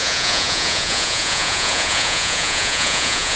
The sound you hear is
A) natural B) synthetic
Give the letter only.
B